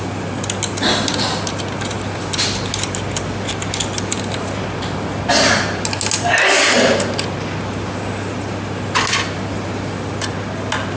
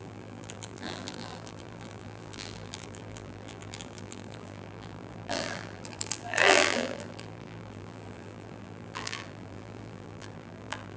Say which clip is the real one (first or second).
first